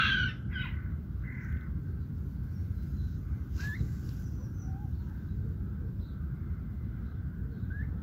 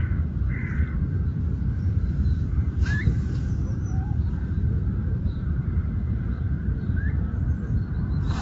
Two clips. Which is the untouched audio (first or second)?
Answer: first